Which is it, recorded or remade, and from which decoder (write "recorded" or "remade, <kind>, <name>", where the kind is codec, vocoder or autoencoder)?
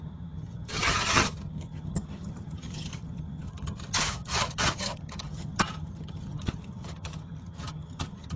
remade, vocoder, HiFi-GAN